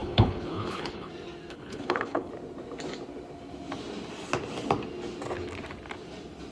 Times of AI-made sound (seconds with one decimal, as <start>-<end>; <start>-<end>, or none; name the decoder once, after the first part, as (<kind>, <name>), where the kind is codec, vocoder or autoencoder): 0.0-1.1 (codec, HILCodec); 1.5-2.3

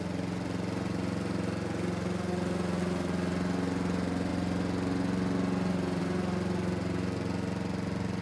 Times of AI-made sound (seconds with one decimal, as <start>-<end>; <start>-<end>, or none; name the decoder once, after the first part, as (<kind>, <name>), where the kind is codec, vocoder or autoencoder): none

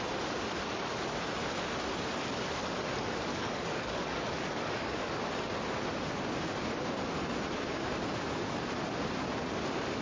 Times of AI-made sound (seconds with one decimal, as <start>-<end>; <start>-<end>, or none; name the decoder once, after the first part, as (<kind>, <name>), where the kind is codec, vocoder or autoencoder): 3.3-5.2 (codec, DAC)

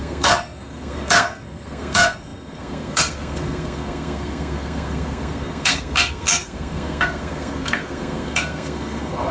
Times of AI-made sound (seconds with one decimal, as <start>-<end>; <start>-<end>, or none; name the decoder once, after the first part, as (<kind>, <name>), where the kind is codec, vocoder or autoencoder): 0.0-9.3 (codec, SNAC)

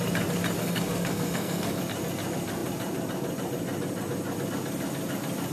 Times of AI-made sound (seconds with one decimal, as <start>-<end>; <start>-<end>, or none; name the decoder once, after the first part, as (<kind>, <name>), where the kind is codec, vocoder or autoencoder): 0.6-1.8 (codec, SNAC)

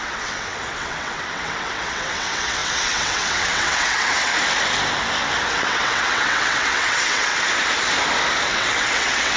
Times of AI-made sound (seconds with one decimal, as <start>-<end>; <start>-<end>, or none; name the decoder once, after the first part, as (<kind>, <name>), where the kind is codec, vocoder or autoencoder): 0.0-4.3 (vocoder, WaveNeXt); 5.5-7.3; 8.5-9.4

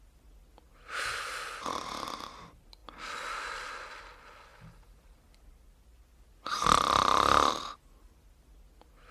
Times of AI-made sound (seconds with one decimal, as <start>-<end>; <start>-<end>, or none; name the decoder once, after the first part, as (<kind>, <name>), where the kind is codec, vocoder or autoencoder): none